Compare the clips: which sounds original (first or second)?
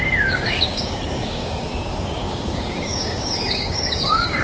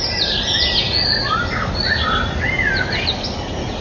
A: second